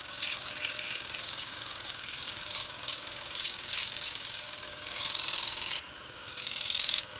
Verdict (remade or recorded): remade